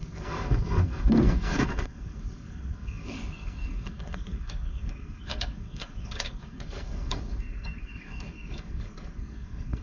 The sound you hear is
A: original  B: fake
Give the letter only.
B